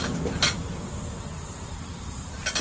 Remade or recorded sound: recorded